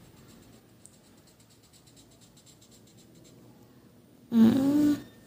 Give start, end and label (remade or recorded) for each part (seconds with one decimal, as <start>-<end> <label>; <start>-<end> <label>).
0.0-5.3 recorded